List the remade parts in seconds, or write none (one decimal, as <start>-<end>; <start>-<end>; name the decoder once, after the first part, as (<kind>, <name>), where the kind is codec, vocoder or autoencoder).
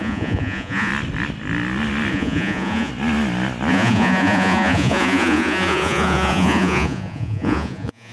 0.0-0.9 (vocoder, Vocos); 2.1-2.9; 3.7-8.1